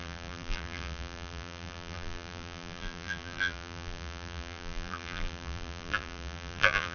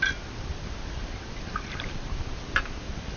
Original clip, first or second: second